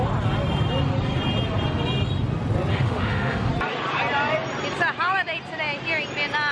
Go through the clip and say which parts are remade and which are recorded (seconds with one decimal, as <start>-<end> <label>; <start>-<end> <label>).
0.0-2.7 recorded; 2.7-3.5 remade; 3.5-6.5 recorded